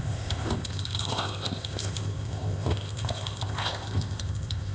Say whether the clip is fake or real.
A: fake